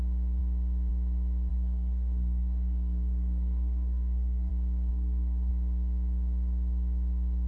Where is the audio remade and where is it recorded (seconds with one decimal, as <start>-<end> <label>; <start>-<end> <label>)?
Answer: 0.0-1.5 recorded; 1.5-4.5 remade; 4.5-4.9 recorded; 4.9-5.5 remade; 5.5-7.5 recorded